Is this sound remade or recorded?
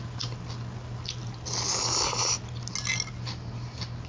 recorded